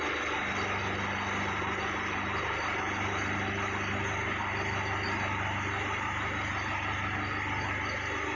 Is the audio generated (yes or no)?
no